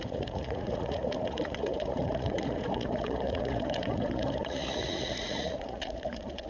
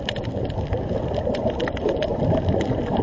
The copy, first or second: first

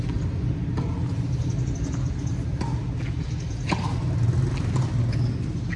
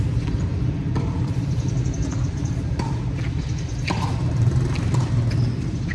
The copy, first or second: second